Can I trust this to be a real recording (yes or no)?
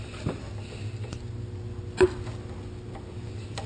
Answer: yes